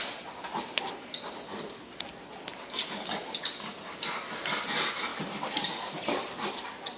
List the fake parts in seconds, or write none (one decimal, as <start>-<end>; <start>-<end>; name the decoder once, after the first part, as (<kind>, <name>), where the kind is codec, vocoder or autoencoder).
5.1-7.0 (vocoder, BigVGAN v2)